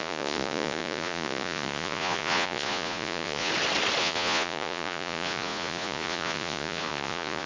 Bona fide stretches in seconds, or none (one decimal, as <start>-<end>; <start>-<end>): 3.5-4.0